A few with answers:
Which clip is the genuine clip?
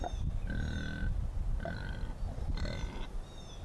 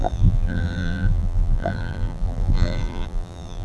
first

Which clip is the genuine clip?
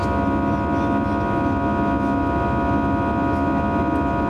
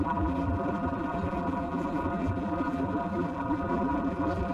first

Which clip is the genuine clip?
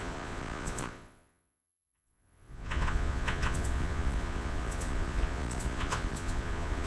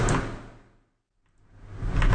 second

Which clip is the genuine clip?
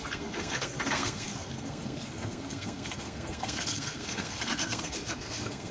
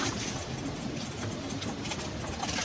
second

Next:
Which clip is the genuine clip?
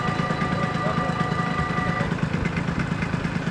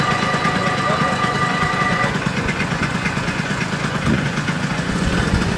first